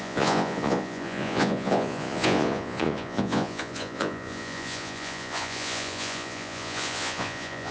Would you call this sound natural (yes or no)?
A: no